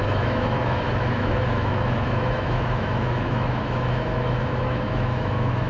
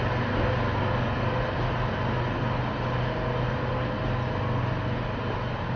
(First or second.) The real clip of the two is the second